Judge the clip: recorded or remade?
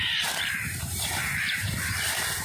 remade